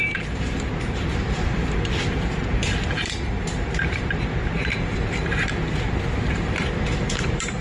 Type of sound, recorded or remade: remade